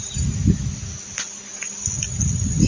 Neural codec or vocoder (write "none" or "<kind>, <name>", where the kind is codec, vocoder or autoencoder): none